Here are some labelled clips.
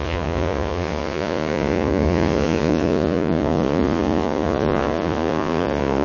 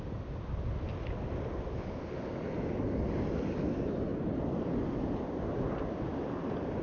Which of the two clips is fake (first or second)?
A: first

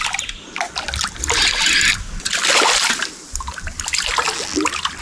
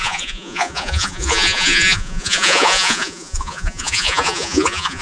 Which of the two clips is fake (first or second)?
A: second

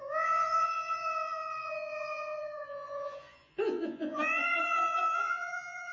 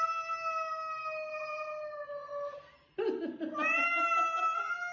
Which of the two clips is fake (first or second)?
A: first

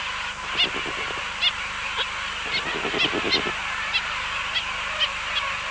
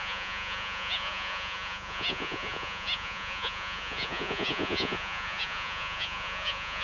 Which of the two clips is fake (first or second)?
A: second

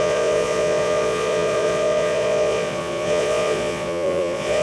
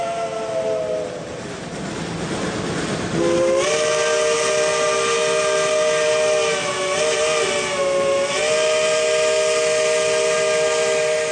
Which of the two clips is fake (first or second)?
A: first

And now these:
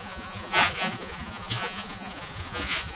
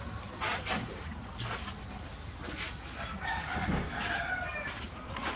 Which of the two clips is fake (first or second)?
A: first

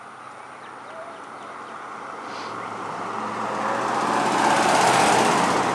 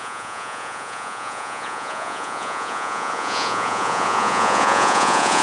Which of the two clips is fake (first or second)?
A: second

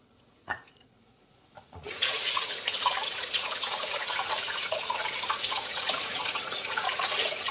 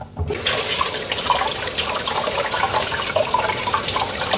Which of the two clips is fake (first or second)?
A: first